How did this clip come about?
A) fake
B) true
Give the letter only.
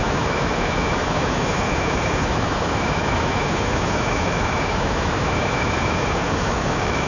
A